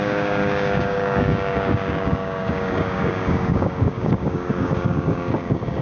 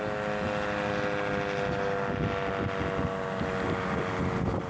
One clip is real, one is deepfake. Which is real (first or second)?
second